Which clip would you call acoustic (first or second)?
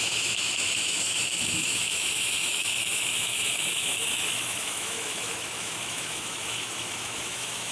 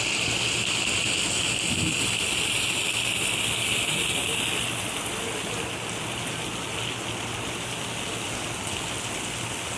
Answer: second